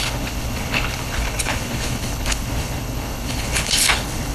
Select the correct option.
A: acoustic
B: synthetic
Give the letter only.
B